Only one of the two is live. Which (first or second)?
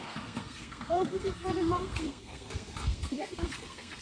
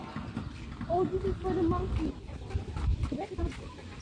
second